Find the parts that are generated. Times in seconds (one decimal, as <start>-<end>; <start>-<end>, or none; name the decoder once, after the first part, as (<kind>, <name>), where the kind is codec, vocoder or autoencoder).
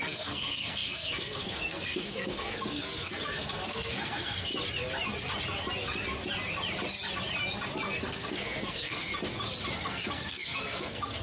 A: 0.0-4.5 (codec, SNAC); 8.0-9.1; 9.7-11.2